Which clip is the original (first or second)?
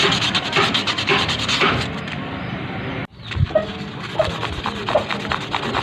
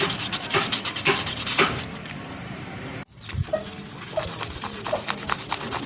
first